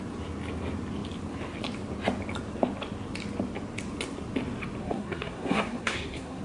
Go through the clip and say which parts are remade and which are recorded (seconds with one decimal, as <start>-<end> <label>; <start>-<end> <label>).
0.0-4.8 recorded; 4.8-6.4 remade